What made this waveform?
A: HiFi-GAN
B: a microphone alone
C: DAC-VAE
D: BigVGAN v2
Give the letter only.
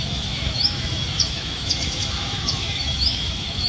C